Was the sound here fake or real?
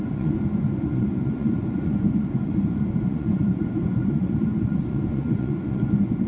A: fake